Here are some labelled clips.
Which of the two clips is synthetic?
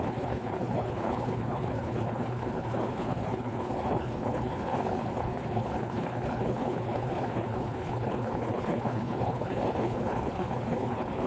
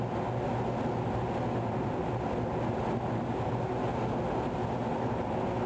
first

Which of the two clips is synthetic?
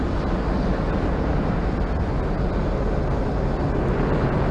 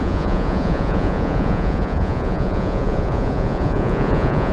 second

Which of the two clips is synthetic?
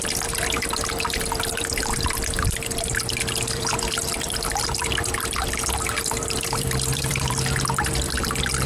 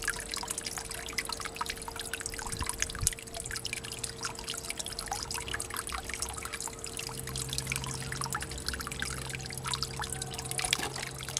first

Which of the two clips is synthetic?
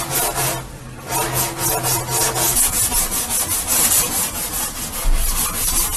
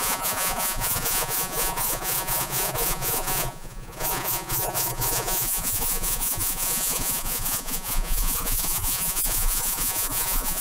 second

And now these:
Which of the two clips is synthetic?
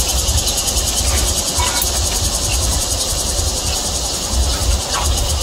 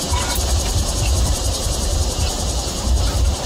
second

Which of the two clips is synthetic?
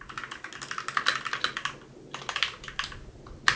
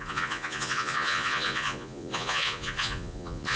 second